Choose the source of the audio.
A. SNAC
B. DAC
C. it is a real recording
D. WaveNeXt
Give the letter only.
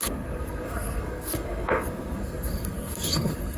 A